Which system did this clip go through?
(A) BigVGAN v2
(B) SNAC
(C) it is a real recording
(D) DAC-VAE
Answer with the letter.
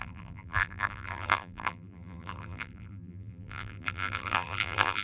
A